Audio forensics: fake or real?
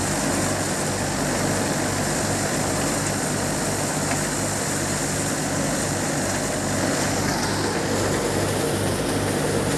real